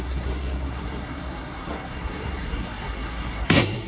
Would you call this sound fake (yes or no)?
yes